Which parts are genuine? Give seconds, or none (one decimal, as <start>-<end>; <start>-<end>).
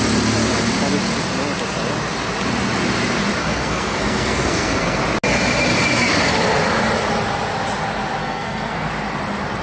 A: 0.0-3.4; 5.0-8.2; 8.9-9.6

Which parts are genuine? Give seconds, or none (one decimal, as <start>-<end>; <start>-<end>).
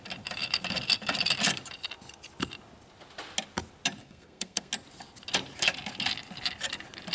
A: 0.0-4.0; 4.7-7.1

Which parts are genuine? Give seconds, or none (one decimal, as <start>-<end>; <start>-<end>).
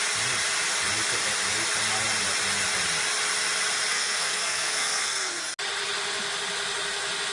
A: 0.0-3.9; 5.4-7.3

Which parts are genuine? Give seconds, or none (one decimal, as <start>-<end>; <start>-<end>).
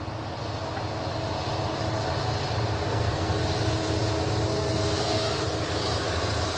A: 0.0-2.9; 3.4-4.5; 5.4-6.6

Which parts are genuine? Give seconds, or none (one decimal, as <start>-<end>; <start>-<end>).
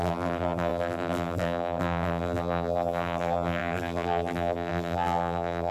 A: none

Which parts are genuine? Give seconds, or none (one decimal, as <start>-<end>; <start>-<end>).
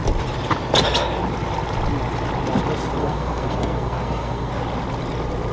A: 0.0-3.0; 4.5-5.5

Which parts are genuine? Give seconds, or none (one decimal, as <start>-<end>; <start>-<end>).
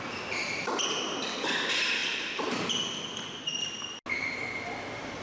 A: 0.0-2.0; 2.7-5.2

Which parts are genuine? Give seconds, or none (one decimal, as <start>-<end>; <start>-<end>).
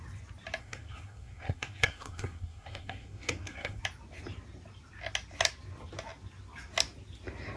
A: 0.0-0.6; 3.8-7.6